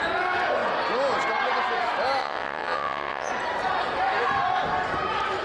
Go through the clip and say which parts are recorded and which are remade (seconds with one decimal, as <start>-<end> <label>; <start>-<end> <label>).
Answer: 0.0-2.2 recorded; 2.2-3.3 remade; 3.3-5.4 recorded